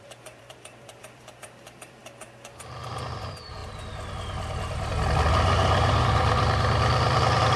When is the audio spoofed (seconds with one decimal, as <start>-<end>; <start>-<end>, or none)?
0.0-2.0; 2.9-3.6; 6.0-7.6